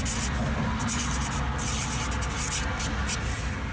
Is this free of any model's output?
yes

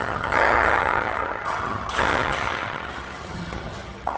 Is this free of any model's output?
no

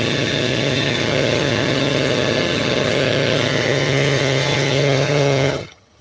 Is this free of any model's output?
no